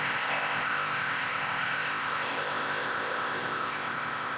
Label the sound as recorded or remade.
remade